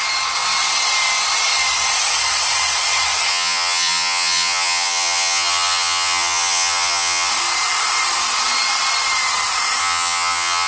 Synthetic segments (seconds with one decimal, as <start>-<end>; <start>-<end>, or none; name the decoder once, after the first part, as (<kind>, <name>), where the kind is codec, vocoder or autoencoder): 3.3-7.3 (vocoder, HiFi-GAN); 9.8-10.7